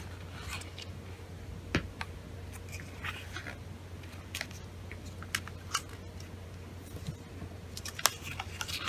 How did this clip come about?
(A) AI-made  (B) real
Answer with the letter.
B